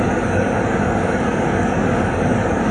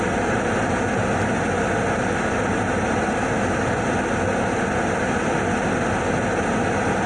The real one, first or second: second